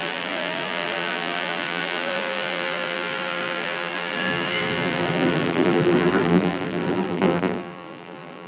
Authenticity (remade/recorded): remade